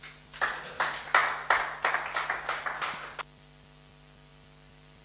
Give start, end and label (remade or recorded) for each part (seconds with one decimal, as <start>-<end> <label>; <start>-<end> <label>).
0.0-5.0 recorded